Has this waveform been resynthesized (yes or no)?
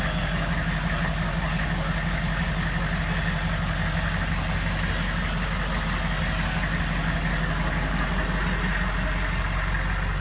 no